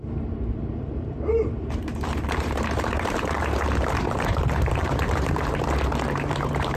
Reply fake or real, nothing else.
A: fake